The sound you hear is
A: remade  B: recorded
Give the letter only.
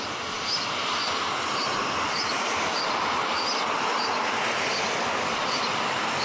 B